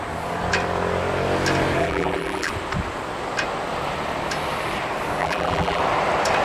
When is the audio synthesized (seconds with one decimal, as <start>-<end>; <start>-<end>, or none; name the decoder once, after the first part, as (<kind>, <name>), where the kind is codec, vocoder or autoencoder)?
1.8-2.5 (vocoder, BigVGAN v2); 5.2-5.8